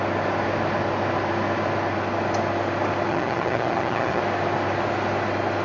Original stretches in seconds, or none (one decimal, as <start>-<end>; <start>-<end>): 0.0-3.1; 4.2-5.6

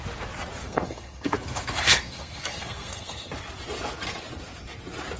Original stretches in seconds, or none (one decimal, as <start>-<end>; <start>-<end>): 0.0-0.6; 3.3-5.2

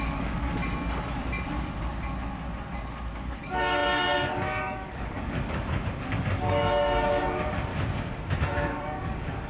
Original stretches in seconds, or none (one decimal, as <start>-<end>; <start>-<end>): 0.6-3.2; 7.7-8.4

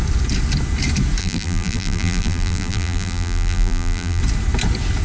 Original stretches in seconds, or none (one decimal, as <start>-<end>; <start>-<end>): 0.0-1.2; 4.2-5.0

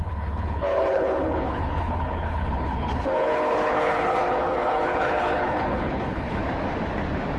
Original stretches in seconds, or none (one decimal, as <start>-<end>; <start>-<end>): 6.4-7.4

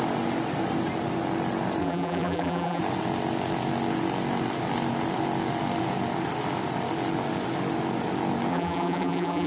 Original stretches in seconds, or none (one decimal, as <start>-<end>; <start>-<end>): 0.0-1.8; 2.8-8.5